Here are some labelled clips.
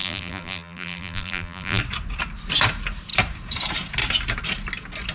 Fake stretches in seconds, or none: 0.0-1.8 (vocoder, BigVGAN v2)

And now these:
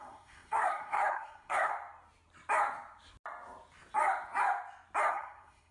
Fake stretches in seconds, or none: 0.0-1.7 (codec, SNAC); 5.1-5.7

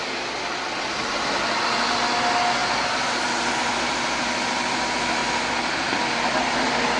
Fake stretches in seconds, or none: none